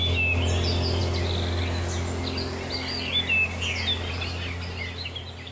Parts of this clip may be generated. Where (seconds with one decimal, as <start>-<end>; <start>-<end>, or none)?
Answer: none